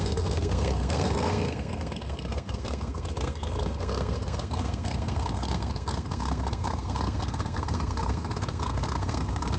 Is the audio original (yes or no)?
no